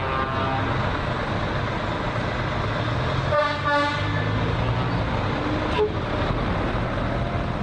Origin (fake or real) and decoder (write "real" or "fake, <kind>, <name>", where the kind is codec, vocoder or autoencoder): real